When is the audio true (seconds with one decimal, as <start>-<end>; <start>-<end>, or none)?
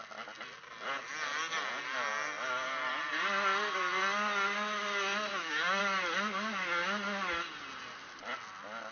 0.0-5.3; 5.8-8.9